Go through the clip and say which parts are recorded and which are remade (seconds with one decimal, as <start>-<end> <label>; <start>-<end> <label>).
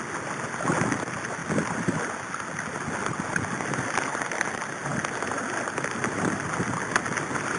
0.0-7.6 recorded